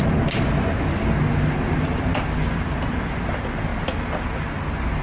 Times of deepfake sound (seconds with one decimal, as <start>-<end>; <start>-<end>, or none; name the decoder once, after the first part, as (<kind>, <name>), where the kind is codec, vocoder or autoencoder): none